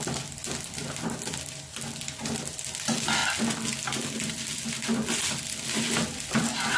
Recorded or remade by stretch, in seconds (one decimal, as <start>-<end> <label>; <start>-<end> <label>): 0.0-6.8 recorded